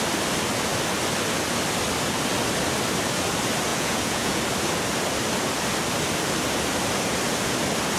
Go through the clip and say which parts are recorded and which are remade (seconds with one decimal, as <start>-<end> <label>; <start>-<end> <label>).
0.0-3.7 recorded; 3.7-4.4 remade; 4.4-8.0 recorded